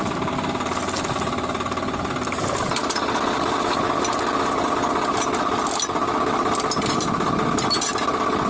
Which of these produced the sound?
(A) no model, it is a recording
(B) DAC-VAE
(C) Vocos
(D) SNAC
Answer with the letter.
A